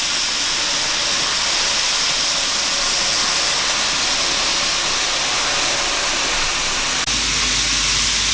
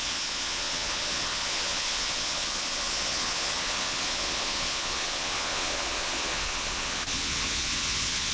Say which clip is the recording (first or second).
first